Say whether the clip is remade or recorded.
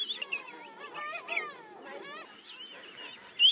recorded